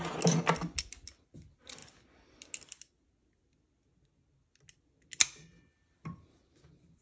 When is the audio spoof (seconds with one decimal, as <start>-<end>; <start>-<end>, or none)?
none